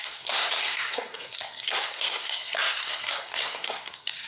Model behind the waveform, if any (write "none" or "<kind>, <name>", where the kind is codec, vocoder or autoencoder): codec, SNAC